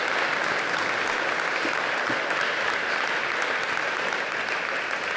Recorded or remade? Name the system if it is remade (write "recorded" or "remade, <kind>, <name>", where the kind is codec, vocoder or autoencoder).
recorded